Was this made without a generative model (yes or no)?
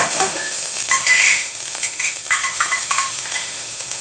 no